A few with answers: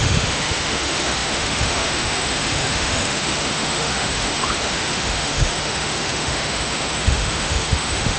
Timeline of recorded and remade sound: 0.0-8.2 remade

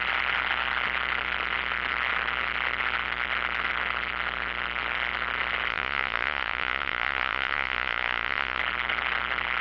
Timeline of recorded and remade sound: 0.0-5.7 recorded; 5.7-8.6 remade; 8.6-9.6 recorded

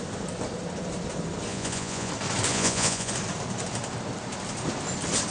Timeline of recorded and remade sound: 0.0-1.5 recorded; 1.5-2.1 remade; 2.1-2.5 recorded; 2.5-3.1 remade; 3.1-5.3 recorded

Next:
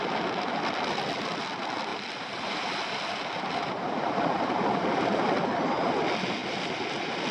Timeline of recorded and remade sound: 0.0-6.4 recorded; 6.4-7.3 remade

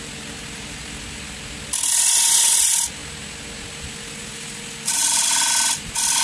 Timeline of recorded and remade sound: 0.0-6.2 recorded

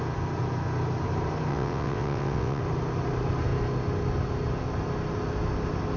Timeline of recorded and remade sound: 0.0-1.5 recorded; 1.5-2.6 remade; 2.6-6.0 recorded

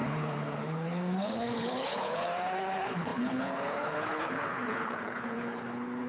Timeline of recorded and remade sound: 0.0-6.1 remade

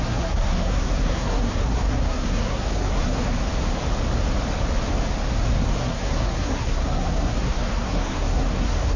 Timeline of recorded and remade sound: 0.0-3.5 remade; 3.5-5.8 recorded; 5.8-9.0 remade